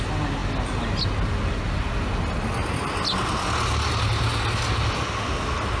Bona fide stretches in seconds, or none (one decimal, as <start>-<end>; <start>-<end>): 0.0-5.8